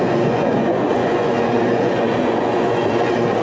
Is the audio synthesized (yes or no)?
yes